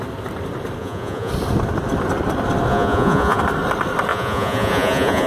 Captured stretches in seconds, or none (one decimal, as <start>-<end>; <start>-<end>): 0.0-0.8; 1.3-2.7; 3.4-4.1

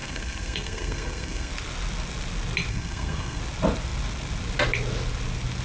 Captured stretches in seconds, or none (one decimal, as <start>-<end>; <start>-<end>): 1.5-2.7; 3.4-5.6

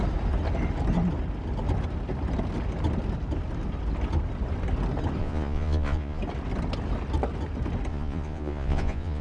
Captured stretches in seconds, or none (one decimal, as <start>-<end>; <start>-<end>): 0.0-5.2; 6.2-7.9

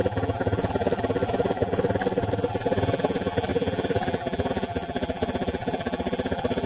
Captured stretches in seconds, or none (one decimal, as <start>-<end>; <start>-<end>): none

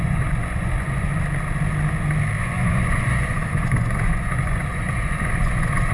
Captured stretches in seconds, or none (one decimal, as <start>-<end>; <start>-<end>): 1.1-2.4